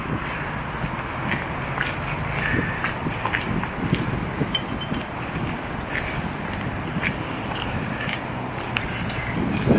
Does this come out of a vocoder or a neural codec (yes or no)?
no